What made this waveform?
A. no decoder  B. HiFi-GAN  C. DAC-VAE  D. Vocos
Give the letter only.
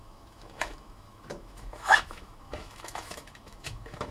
C